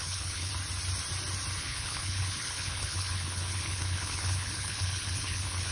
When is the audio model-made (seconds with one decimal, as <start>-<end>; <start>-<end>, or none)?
0.0-0.5; 1.6-5.7